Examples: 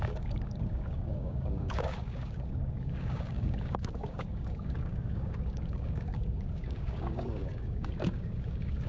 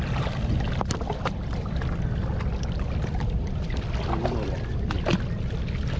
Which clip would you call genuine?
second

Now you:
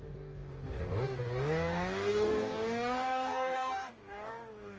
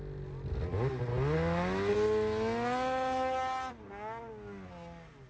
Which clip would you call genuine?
second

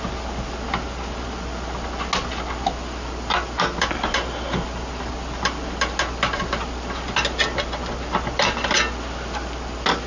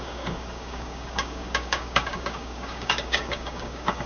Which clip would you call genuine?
first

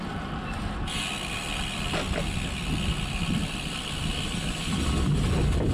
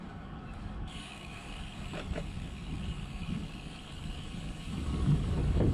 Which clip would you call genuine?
first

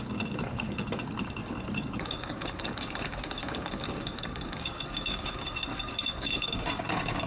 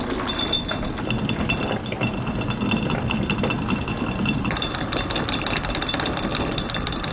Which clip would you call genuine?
second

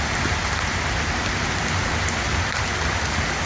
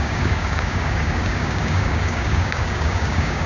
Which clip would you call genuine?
first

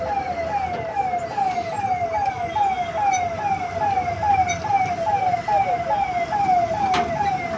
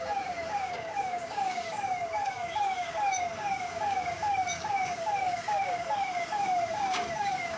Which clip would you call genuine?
first